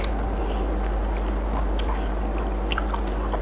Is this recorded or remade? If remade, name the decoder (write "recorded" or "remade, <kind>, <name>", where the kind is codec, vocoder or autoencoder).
recorded